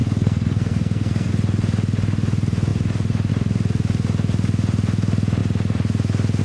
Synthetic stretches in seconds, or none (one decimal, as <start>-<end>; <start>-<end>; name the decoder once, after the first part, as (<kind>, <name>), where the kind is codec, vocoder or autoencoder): 0.0-1.3 (codec, SNAC)